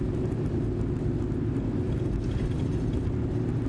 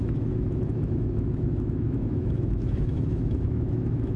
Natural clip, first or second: first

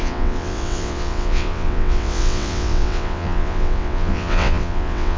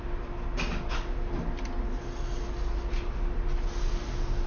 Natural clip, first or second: second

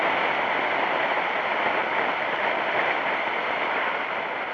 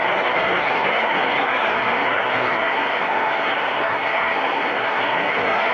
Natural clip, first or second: first